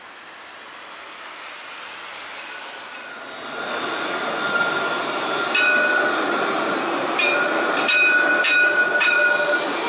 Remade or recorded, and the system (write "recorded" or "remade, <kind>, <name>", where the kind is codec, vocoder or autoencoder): recorded